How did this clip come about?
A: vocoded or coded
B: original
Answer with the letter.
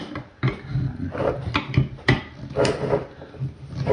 B